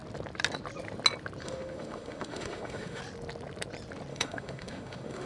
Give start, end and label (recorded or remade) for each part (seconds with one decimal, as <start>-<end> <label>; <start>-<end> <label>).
0.0-1.4 recorded; 1.4-3.0 remade; 3.0-4.1 recorded; 4.1-5.3 remade